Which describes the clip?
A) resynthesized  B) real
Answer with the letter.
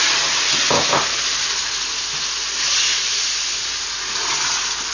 B